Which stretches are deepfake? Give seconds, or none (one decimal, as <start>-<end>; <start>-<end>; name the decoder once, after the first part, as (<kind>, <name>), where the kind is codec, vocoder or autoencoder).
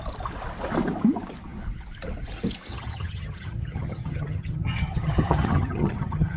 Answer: 2.7-6.4 (vocoder, HiFi-GAN)